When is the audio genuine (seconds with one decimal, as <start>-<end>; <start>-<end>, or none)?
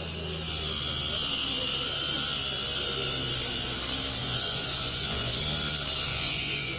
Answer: 0.0-4.2; 5.4-6.1